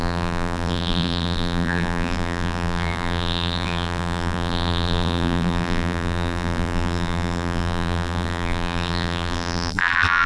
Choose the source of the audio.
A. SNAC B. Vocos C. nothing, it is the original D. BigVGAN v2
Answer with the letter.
D